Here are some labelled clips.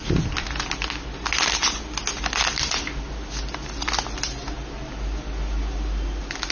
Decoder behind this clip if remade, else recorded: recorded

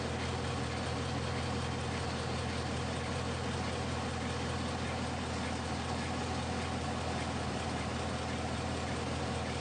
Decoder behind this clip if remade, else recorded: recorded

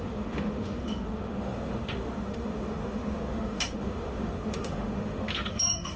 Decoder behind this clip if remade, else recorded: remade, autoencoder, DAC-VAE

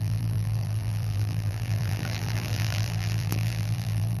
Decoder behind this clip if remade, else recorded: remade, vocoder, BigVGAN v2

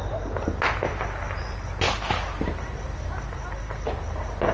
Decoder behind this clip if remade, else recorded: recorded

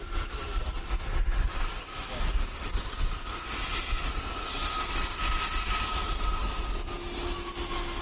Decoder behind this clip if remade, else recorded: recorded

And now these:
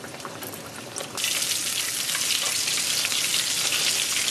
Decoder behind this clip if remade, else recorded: recorded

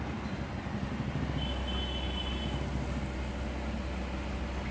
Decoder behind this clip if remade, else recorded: recorded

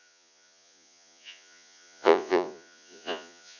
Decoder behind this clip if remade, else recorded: remade, vocoder, Vocos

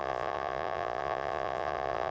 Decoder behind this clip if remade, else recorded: remade, vocoder, Vocos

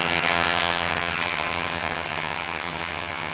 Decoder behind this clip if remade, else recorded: remade, vocoder, HiFi-GAN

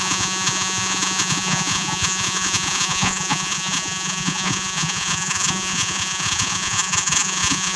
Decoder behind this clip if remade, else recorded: remade, vocoder, Vocos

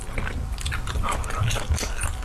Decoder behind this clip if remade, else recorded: recorded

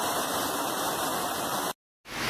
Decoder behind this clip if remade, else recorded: recorded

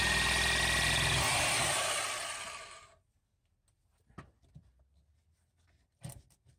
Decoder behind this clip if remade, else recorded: recorded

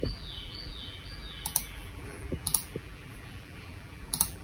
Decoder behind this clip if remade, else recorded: remade, vocoder, BigVGAN v2